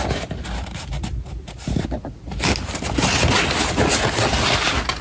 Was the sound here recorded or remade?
recorded